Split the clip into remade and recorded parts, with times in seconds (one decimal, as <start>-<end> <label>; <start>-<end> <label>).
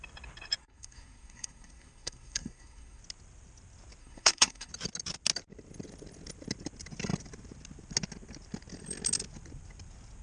0.0-0.6 recorded; 0.6-3.0 remade; 3.0-4.0 recorded; 4.0-4.7 remade; 4.7-10.2 recorded